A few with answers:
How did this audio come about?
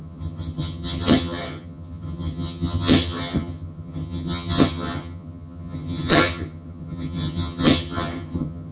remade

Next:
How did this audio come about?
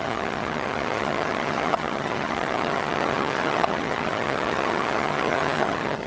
remade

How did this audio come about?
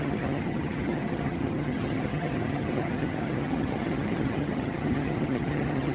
remade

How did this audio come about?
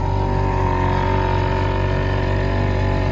recorded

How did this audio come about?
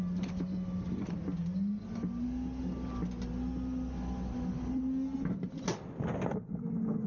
recorded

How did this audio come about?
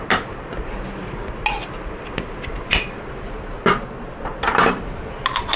recorded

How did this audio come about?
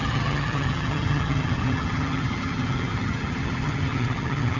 remade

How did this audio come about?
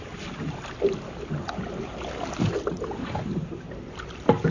recorded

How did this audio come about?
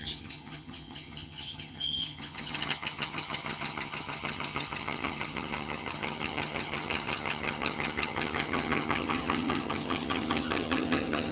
remade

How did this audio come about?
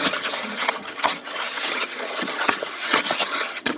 remade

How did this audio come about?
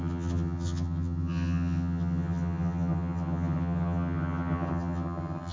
remade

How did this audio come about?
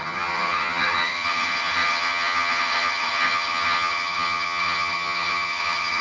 remade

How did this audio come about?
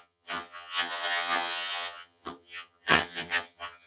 remade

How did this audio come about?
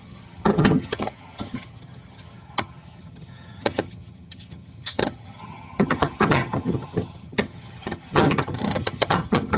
remade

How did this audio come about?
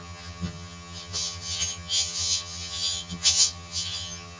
remade